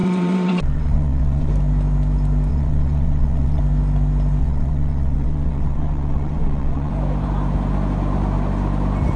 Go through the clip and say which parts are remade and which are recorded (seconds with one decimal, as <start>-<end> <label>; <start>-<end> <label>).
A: 0.0-1.5 remade; 1.5-2.5 recorded; 2.5-3.6 remade; 3.6-4.4 recorded; 4.4-6.9 remade; 6.9-9.2 recorded